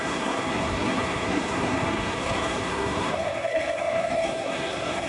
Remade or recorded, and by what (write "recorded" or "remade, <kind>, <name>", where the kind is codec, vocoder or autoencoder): remade, codec, SNAC